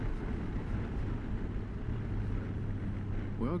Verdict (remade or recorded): recorded